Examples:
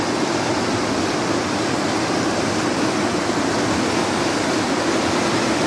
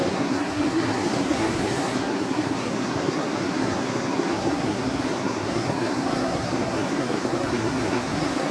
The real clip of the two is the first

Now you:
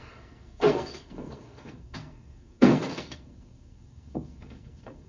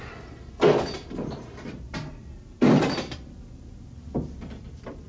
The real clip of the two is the second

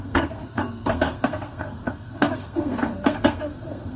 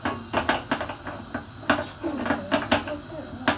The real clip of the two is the second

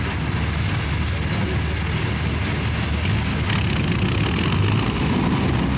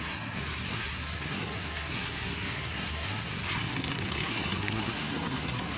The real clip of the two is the first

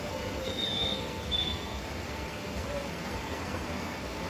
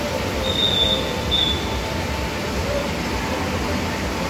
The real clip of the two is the second